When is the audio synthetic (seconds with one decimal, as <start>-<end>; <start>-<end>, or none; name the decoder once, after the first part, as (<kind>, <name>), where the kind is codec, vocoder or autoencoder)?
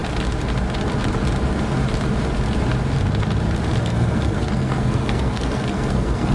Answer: 3.8-6.3 (codec, SNAC)